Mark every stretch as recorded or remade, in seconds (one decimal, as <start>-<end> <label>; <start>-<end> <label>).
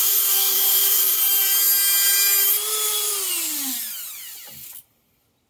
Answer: 0.0-1.2 remade; 1.2-5.5 recorded